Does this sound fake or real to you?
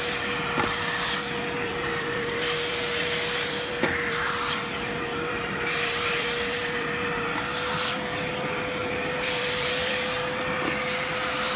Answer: fake